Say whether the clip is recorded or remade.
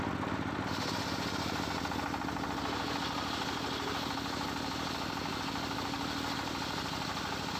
recorded